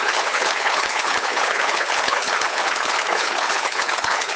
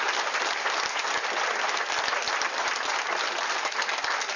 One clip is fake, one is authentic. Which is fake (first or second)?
first